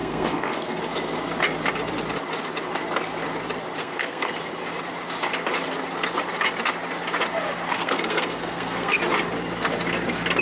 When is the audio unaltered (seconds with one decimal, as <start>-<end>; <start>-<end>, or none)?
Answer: 0.8-3.8; 4.3-7.7; 9.0-10.4